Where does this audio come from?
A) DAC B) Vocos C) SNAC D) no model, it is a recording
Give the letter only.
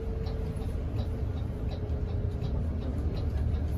D